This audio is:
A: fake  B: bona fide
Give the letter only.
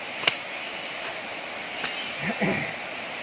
B